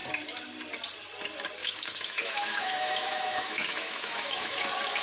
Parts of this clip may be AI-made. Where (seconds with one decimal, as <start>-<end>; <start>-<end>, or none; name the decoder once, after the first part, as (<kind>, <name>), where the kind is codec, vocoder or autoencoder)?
1.6-4.6 (autoencoder, DAC-VAE)